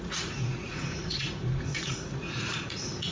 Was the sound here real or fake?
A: fake